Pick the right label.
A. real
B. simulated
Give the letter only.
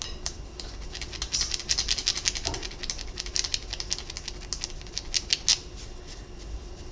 A